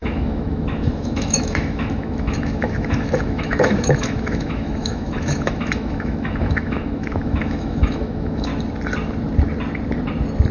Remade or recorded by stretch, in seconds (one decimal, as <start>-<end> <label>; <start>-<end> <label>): 0.0-8.5 remade; 8.5-10.5 recorded